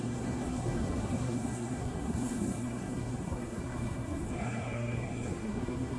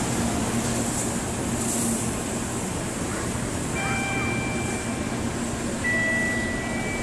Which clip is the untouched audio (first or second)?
second